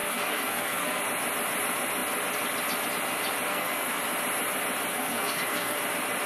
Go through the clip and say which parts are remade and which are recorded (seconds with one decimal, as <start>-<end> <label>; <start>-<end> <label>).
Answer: 0.0-1.0 remade; 1.0-3.5 recorded; 3.5-4.0 remade; 4.0-4.9 recorded; 4.9-5.8 remade; 5.8-6.3 recorded